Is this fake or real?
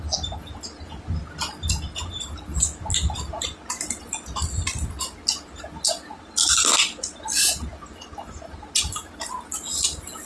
real